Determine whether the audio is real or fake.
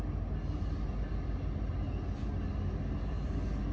real